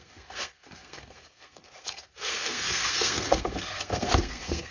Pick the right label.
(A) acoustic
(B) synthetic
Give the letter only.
B